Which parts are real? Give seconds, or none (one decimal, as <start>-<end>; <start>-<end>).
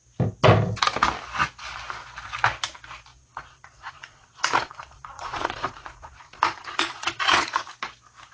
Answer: 0.0-3.1; 7.6-8.3